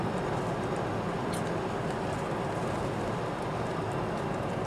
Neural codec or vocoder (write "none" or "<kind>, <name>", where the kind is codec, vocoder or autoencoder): none